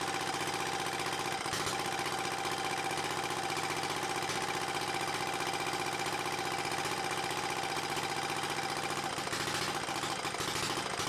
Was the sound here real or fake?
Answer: real